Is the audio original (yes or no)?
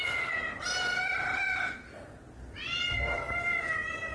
yes